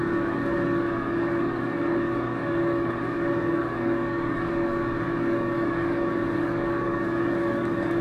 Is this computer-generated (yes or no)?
yes